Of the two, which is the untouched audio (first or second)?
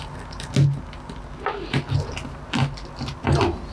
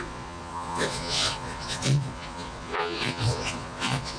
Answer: first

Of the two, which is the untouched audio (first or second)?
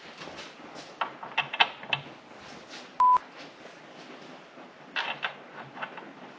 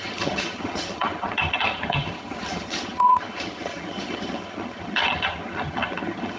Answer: first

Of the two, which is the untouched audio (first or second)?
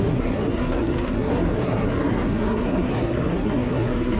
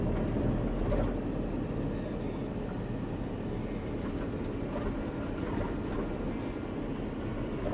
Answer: second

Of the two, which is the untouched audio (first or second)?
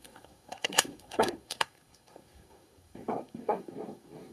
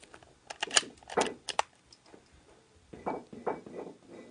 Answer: second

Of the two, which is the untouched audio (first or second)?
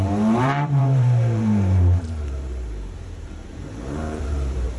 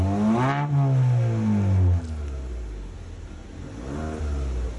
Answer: second